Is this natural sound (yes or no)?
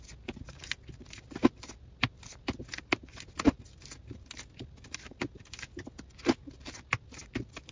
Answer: yes